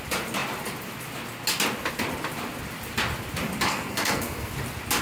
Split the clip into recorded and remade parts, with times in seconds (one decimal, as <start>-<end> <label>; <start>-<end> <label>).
0.0-3.7 recorded; 3.7-4.5 remade; 4.5-5.0 recorded